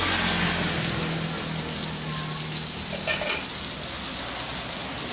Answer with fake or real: real